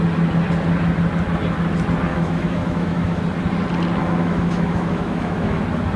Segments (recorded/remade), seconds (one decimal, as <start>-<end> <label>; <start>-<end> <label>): 0.0-2.1 recorded; 2.1-3.2 remade; 3.2-4.0 recorded; 4.0-5.6 remade; 5.6-6.0 recorded